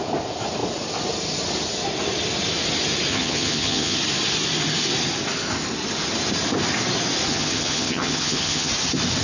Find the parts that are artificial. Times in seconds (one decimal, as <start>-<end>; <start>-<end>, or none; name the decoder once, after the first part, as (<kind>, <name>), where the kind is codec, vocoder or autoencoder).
3.1-4.0 (vocoder, HiFi-GAN); 7.3-8.7